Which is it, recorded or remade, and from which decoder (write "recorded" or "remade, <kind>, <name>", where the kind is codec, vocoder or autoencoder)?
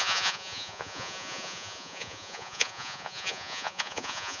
remade, vocoder, Vocos